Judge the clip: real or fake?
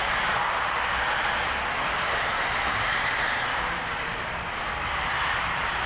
real